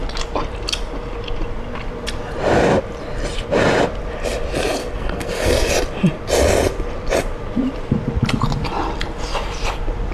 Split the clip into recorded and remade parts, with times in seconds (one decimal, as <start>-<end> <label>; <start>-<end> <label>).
0.0-4.8 recorded; 4.8-5.7 remade; 5.7-10.1 recorded